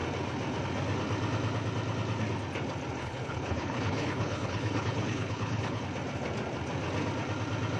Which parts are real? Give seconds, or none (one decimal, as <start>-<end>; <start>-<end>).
0.0-3.0; 5.8-7.8